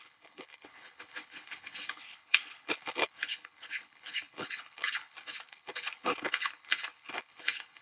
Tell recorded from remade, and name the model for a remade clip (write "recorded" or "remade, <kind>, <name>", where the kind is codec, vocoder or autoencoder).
remade, codec, HILCodec